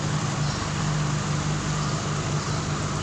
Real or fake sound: real